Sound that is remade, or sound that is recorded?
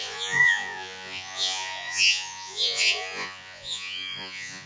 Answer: remade